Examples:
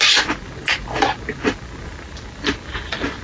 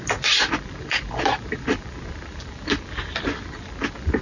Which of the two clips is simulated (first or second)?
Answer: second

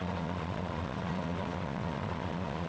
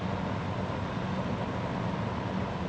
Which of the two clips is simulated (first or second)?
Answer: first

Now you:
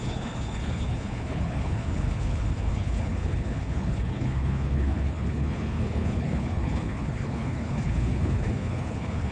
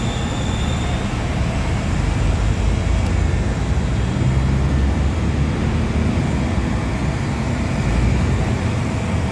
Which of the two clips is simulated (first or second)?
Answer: first